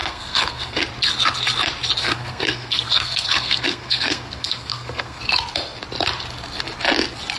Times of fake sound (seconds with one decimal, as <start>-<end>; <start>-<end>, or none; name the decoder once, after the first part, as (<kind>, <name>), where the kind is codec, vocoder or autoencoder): 0.0-0.8 (codec, SNAC); 2.0-5.2